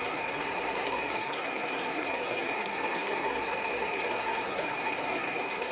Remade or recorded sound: remade